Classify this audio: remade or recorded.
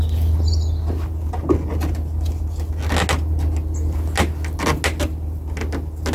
recorded